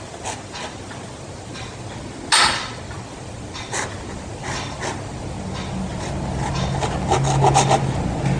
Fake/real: real